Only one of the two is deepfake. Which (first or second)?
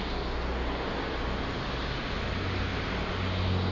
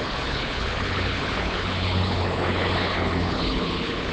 second